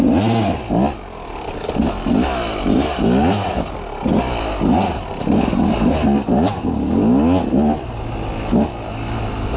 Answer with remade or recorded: recorded